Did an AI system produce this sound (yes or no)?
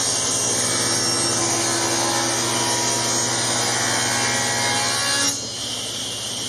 no